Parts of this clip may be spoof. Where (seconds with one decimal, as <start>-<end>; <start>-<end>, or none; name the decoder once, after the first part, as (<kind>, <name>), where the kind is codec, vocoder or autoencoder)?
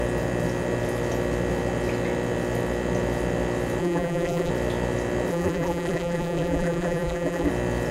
3.8-4.5 (vocoder, BigVGAN v2); 5.3-7.5